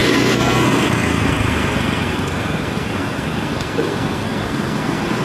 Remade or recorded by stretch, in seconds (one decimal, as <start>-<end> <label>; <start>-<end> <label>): 0.0-5.2 remade